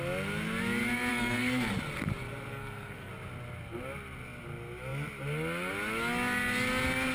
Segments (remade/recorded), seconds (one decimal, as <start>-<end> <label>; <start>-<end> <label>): 0.0-1.1 recorded; 1.1-1.7 remade; 1.7-2.5 recorded; 2.5-3.1 remade; 3.1-7.1 recorded